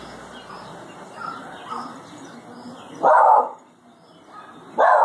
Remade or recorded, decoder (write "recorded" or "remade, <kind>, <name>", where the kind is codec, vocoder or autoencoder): recorded